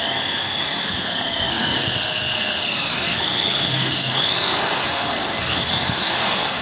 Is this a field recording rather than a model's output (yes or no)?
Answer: no